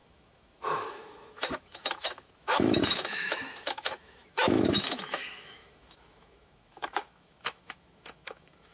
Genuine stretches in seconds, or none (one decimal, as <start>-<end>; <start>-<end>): none